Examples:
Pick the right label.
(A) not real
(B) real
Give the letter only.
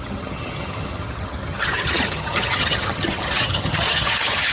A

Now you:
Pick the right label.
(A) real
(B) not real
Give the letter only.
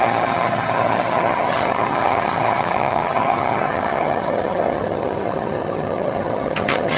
B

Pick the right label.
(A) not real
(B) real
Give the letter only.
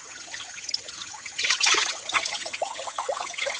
A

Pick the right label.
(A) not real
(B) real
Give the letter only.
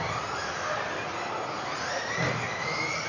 B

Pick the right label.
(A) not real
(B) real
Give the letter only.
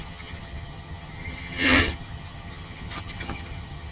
A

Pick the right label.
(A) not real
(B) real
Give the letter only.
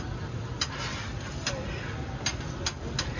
B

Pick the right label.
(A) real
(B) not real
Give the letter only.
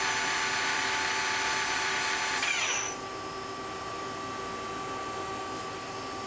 A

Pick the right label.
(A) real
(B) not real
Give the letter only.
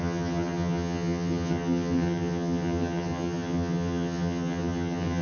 B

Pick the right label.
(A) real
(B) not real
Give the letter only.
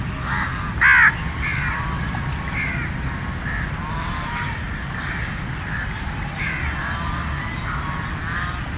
A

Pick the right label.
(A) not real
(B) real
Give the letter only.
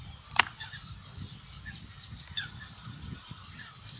B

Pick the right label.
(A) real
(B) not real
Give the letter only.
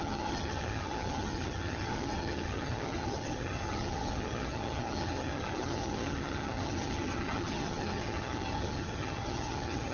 B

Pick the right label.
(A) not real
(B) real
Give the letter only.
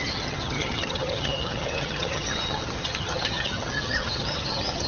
A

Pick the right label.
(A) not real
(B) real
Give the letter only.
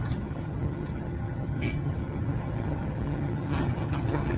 A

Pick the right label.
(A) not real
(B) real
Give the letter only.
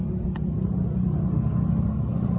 B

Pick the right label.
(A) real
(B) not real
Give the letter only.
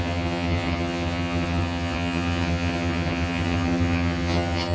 B